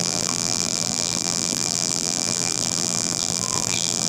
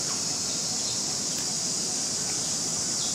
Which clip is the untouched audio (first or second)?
second